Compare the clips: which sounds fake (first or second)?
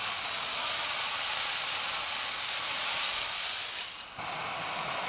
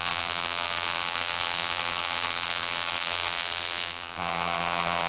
second